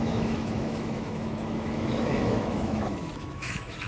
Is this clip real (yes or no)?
no